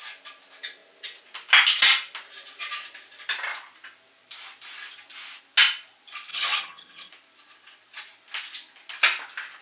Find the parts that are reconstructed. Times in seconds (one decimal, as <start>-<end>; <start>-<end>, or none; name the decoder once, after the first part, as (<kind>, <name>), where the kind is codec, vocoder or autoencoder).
6.3-7.1 (vocoder, HiFi-GAN)